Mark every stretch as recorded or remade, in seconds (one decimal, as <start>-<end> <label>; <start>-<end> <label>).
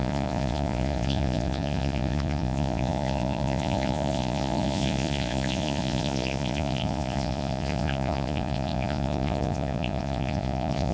0.0-10.9 remade